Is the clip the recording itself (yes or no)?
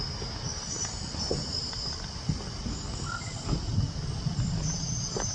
yes